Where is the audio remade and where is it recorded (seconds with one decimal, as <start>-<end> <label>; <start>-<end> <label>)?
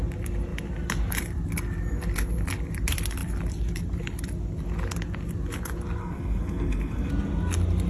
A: 0.0-6.0 recorded; 6.0-7.1 remade; 7.1-7.9 recorded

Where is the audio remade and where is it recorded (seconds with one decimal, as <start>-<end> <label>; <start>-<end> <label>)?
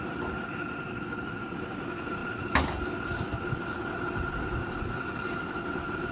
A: 0.0-6.1 recorded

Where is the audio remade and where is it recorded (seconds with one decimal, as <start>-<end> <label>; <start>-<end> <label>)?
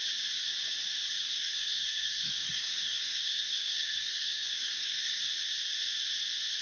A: 0.0-1.2 recorded; 1.2-5.2 remade; 5.2-6.6 recorded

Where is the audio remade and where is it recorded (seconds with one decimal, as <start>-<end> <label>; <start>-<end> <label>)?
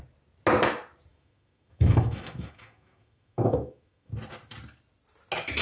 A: 0.0-1.1 recorded; 1.1-4.1 remade; 4.1-5.6 recorded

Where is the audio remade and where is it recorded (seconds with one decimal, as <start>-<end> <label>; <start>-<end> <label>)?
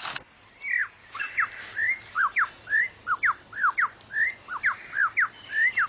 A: 0.0-5.9 recorded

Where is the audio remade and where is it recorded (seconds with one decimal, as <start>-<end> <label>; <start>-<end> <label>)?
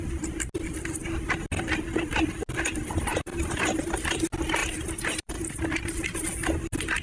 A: 0.0-3.1 recorded; 3.1-3.6 remade; 3.6-4.6 recorded; 4.6-5.6 remade; 5.6-7.0 recorded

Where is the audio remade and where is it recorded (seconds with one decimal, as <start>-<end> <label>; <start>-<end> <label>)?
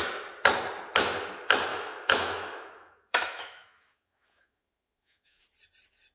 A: 0.0-1.7 recorded; 1.7-5.4 remade; 5.4-6.1 recorded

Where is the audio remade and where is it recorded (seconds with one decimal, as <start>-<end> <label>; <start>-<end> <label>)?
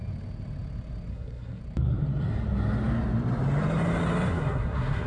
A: 0.0-1.1 recorded; 1.1-1.6 remade; 1.6-4.3 recorded; 4.3-5.1 remade